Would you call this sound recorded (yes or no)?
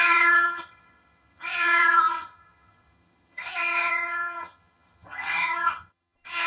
no